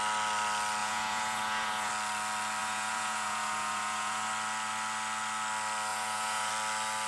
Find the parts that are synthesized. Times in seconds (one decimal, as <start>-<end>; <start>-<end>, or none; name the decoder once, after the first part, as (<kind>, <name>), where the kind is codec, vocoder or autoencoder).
0.8-1.9 (vocoder, Vocos); 2.6-4.3; 5.9-6.5